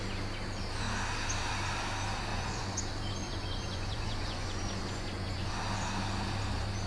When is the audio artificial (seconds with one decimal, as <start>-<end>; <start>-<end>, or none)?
2.3-2.8; 3.2-5.5